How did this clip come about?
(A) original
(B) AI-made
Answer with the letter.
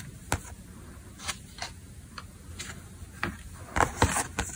A